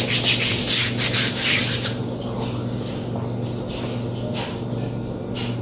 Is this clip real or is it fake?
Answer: real